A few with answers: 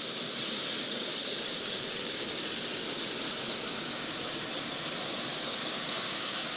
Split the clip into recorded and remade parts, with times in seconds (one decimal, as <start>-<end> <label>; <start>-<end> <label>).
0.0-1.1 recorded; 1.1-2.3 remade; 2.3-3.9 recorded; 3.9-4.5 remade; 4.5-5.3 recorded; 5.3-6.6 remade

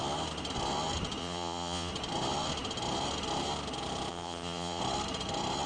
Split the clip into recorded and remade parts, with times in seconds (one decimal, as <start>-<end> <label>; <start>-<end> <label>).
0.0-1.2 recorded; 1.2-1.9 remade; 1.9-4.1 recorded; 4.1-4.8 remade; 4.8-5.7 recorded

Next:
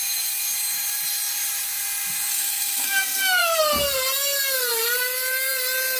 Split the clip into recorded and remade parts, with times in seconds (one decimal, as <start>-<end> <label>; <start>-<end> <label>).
0.0-2.3 recorded; 2.3-3.6 remade; 3.6-6.0 recorded